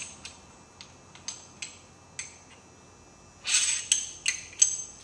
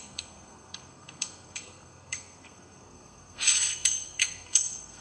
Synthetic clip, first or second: second